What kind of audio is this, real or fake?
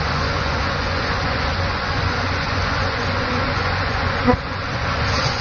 fake